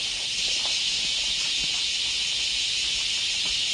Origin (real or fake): real